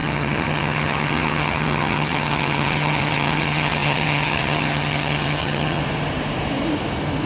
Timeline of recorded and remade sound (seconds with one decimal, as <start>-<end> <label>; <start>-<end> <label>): 0.0-5.8 remade; 5.8-7.3 recorded